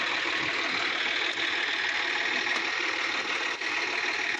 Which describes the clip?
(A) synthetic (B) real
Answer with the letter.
B